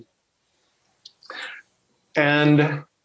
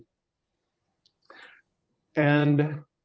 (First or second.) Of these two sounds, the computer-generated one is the second